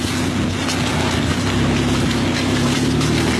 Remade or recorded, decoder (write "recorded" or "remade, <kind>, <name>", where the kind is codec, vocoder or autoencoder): recorded